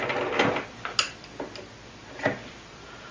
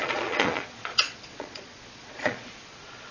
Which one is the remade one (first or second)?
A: second